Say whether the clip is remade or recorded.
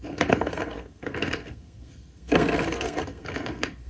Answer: remade